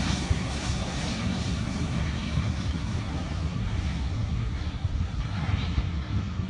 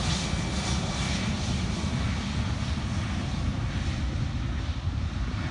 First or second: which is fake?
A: first